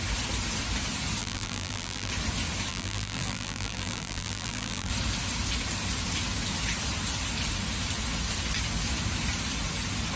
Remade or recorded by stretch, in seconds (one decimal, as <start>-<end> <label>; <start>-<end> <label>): 0.0-1.2 recorded; 1.2-2.1 remade; 2.1-2.7 recorded; 2.7-4.9 remade; 4.9-10.2 recorded